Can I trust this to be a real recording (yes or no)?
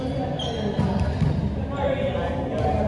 yes